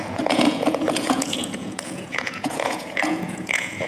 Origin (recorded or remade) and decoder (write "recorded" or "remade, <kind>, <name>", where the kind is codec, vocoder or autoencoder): remade, vocoder, Vocos